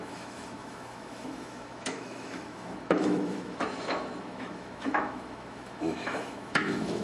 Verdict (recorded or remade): remade